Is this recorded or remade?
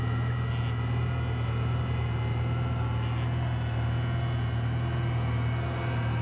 recorded